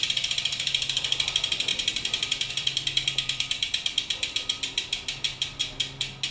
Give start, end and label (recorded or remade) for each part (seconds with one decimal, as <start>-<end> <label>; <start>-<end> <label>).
0.0-5.6 remade; 5.6-6.3 recorded